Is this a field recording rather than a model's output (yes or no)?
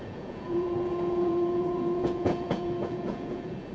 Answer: no